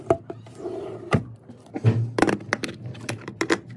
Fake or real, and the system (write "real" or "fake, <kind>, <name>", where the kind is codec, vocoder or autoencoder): real